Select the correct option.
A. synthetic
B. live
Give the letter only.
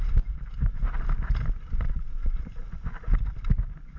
B